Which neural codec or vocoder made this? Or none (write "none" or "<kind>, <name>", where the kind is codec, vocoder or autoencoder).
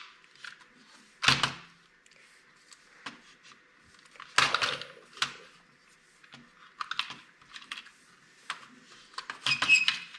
none